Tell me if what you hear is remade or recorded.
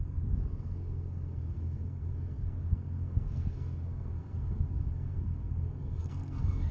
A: remade